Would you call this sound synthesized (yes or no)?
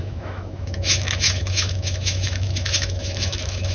yes